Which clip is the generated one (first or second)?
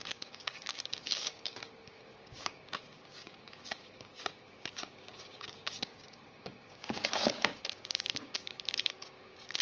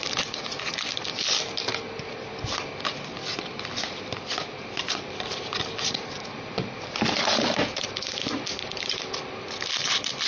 first